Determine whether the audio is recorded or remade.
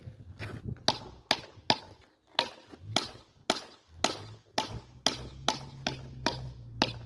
recorded